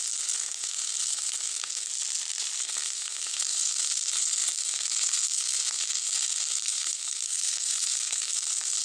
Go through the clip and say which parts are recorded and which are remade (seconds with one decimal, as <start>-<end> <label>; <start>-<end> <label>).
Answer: 0.0-1.9 remade; 1.9-2.6 recorded; 2.6-8.8 remade